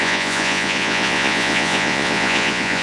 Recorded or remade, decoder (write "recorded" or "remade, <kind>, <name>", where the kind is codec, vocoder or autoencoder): remade, vocoder, Vocos